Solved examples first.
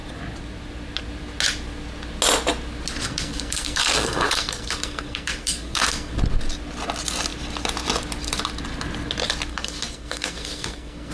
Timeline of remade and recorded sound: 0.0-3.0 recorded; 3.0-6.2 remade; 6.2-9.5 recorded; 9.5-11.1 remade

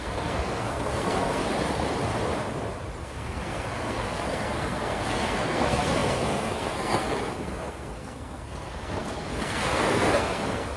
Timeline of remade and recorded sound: 0.0-1.4 remade; 1.4-3.0 recorded; 3.0-10.8 remade

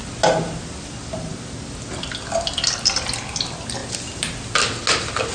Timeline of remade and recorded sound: 0.0-5.3 recorded

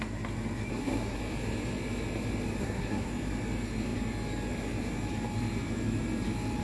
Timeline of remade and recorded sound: 0.0-0.7 recorded; 0.7-1.2 remade; 1.2-2.6 recorded; 2.6-3.1 remade; 3.1-6.6 recorded